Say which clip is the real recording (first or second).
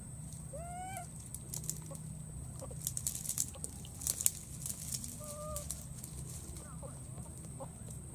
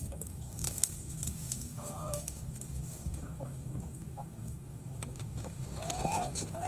first